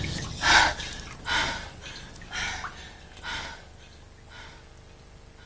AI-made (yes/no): no